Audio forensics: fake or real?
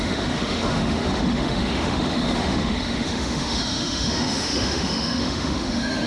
fake